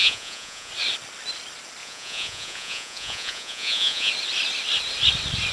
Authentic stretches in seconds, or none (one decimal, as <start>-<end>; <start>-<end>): 0.7-1.8; 4.1-5.5